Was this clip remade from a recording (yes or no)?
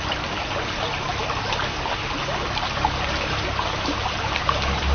no